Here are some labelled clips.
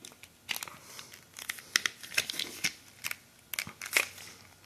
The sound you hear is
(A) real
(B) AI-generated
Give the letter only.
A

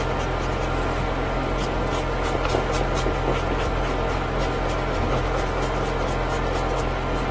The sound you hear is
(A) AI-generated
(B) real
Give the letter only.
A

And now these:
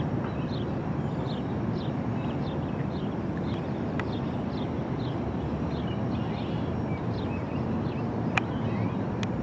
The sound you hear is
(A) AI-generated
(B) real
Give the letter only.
B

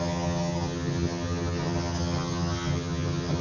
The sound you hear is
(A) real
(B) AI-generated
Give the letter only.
B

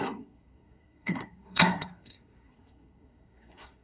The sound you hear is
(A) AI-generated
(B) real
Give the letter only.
A